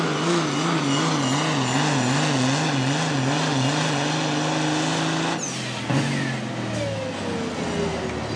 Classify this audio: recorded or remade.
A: recorded